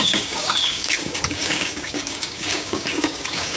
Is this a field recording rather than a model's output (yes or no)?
no